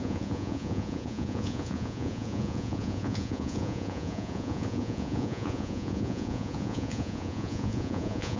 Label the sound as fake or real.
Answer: fake